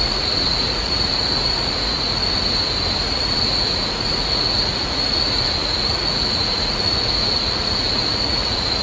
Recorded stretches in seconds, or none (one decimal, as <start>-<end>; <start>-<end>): 2.2-3.0